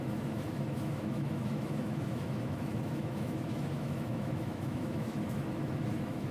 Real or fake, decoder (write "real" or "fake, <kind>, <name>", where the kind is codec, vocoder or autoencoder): fake, autoencoder, DAC-VAE